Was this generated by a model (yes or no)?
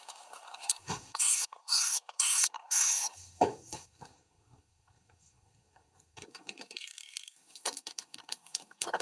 yes